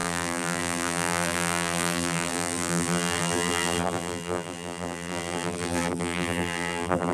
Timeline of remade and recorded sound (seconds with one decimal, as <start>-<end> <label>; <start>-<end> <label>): 0.0-7.1 remade